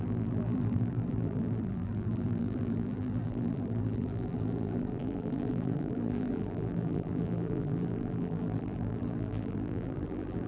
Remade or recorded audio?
remade